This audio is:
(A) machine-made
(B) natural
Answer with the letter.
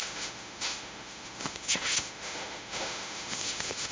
A